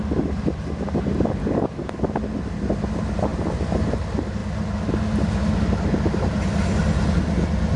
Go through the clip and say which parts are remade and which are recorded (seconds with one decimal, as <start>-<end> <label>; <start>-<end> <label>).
0.0-1.4 recorded; 1.4-2.0 remade; 2.0-7.8 recorded